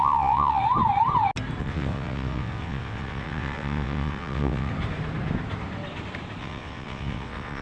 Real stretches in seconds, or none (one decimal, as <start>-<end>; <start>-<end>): 0.6-1.6; 4.7-6.4